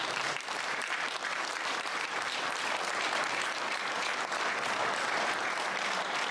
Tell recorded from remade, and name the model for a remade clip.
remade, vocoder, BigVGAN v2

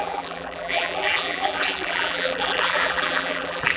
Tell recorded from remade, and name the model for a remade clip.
remade, vocoder, BigVGAN v2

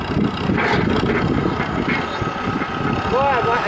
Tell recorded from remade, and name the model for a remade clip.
recorded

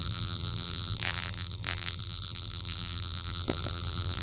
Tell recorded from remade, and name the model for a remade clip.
remade, vocoder, BigVGAN v2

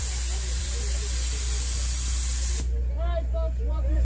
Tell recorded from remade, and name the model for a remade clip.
remade, vocoder, BigVGAN v2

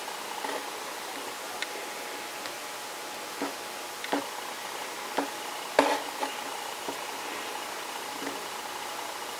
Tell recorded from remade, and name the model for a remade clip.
recorded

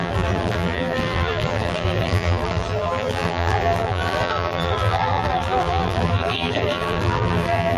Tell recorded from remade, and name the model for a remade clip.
remade, vocoder, BigVGAN v2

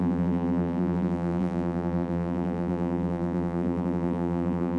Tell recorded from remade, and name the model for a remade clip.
remade, vocoder, BigVGAN v2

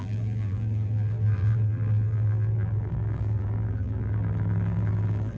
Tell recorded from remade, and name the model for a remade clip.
remade, vocoder, BigVGAN v2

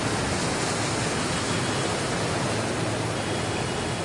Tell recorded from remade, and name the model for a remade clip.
recorded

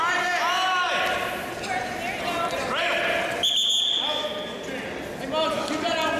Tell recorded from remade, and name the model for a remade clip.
recorded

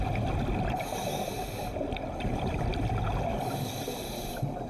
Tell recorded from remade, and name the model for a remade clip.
recorded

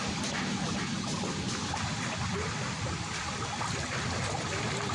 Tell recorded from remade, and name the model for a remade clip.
recorded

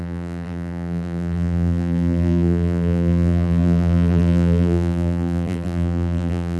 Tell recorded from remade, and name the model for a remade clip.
remade, vocoder, BigVGAN v2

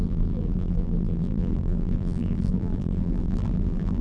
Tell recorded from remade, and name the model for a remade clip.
remade, vocoder, BigVGAN v2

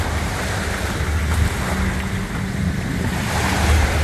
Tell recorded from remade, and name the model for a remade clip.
recorded